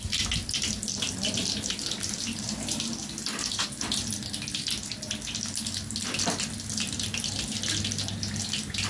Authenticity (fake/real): real